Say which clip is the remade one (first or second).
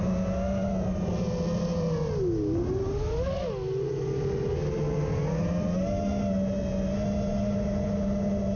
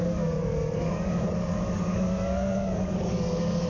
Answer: second